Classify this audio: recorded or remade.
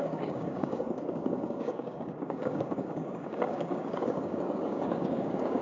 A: remade